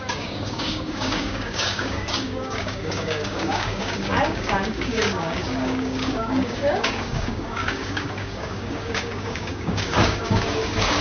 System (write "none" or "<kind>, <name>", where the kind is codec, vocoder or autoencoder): codec, DAC